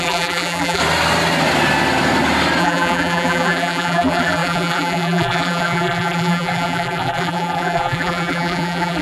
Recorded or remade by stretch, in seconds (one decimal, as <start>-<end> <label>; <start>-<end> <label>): 0.0-0.8 remade; 0.8-2.6 recorded; 2.6-9.0 remade